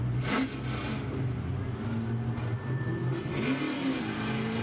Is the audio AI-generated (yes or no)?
no